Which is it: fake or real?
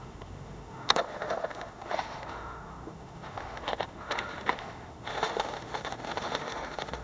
fake